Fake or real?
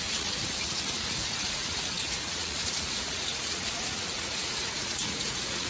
fake